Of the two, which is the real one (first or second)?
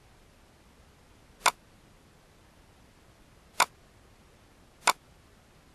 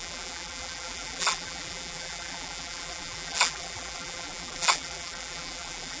first